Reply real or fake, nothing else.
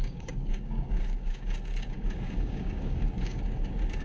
fake